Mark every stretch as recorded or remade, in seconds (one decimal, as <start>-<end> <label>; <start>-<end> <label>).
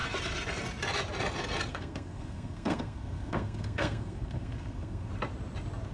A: 0.0-1.7 recorded; 1.7-5.1 remade; 5.1-5.9 recorded